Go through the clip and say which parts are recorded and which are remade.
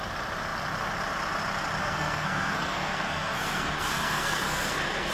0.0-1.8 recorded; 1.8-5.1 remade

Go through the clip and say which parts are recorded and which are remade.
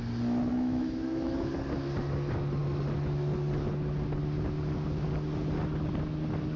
0.0-0.5 recorded; 0.5-1.5 remade; 1.5-6.6 recorded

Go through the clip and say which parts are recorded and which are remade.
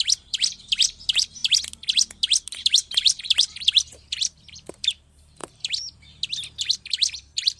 0.0-1.4 remade; 1.4-2.6 recorded; 2.6-5.4 remade; 5.4-6.6 recorded; 6.6-7.6 remade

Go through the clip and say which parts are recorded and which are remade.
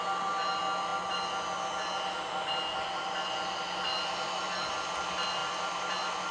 0.0-6.3 recorded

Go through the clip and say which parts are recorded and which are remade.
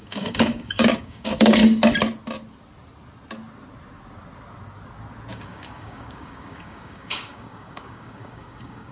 0.0-1.6 remade; 1.6-5.3 recorded; 5.3-8.9 remade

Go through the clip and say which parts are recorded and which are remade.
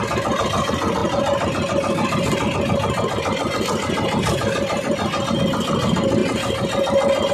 0.0-7.3 recorded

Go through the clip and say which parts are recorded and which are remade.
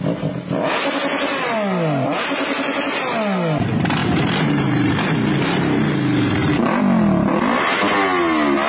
0.0-4.0 recorded; 4.0-4.9 remade; 4.9-8.7 recorded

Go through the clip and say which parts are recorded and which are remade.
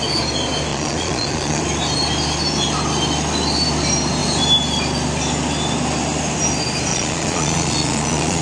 0.0-0.7 recorded; 0.7-1.6 remade; 1.6-6.9 recorded; 6.9-8.4 remade